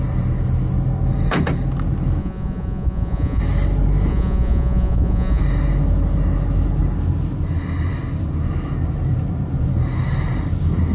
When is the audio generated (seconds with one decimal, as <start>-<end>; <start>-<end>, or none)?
2.2-3.4; 4.1-5.4